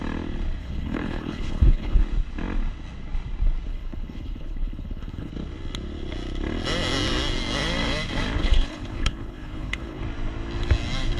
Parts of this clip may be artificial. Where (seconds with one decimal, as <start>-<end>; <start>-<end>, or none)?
0.6-2.0; 3.7-5.3; 8.4-10.0